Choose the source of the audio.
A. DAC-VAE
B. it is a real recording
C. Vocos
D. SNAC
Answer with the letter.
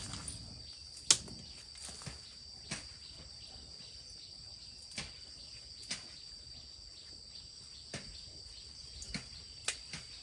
B